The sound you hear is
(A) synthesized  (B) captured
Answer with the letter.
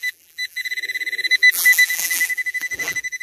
A